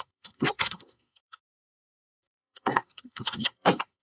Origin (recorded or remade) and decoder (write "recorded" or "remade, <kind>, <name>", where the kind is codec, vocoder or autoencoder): remade, codec, SNAC